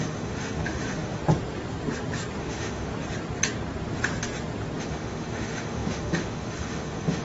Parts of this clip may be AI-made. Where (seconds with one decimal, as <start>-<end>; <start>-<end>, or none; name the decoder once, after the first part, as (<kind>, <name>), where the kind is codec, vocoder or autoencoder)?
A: 0.0-1.2 (autoencoder, DAC-VAE); 2.4-2.9; 4.8-7.2